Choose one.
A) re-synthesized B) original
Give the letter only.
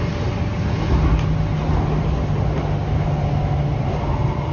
B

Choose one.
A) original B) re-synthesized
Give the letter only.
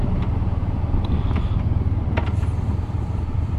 A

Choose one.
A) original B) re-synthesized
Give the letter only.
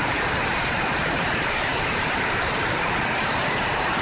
B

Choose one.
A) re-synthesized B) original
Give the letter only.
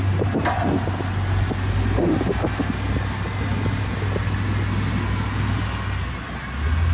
B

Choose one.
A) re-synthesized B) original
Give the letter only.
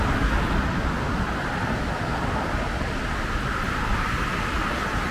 B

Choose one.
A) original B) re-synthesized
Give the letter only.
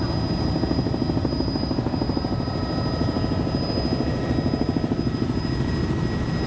A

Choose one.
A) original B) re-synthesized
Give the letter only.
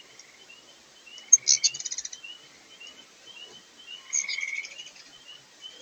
A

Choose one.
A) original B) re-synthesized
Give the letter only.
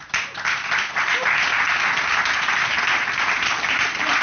A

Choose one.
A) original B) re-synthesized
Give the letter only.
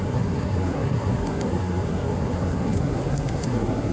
B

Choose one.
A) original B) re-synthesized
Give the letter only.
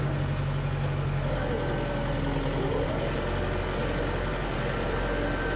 A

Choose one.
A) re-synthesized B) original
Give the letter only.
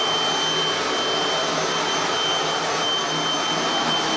B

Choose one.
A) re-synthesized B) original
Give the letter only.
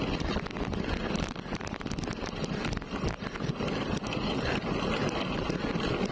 B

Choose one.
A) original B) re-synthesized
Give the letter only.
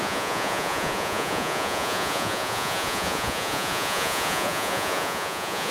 B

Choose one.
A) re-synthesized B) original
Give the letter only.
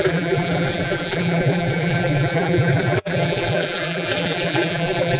A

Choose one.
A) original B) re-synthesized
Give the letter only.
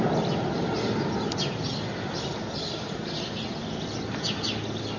A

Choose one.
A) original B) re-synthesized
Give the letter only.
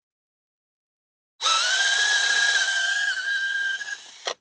A